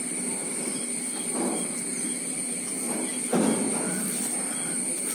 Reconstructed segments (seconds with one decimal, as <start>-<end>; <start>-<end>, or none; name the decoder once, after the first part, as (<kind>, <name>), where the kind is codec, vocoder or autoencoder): 0.0-0.4 (vocoder, BigVGAN v2); 1.4-5.1